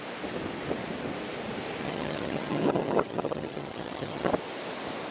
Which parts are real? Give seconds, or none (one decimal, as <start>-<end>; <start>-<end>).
0.0-1.8; 4.3-5.1